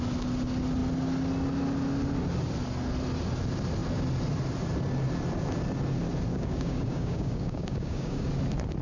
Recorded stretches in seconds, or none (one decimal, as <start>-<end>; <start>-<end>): 0.0-6.3; 8.3-8.8

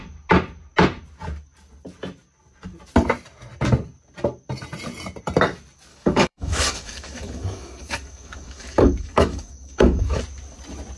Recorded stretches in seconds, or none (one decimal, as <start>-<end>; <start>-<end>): 0.0-5.9; 10.2-11.0

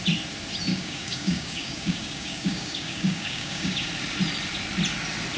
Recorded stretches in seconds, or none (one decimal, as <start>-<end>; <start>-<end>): 0.0-0.7; 3.9-5.4

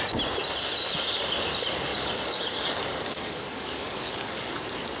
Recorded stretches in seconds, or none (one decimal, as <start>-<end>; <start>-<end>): 0.0-1.9; 4.5-5.0

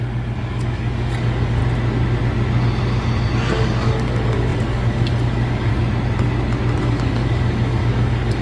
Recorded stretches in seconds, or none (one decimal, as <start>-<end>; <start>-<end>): 1.6-3.5; 5.7-6.8

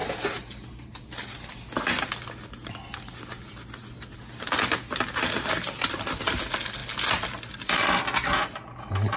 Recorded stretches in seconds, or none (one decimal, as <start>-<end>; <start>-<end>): 0.0-9.2